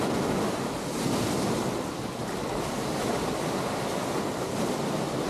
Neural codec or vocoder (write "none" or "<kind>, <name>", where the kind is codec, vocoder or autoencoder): none